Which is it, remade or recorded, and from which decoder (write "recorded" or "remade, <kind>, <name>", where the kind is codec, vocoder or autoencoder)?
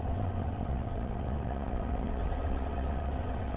remade, vocoder, WaveNeXt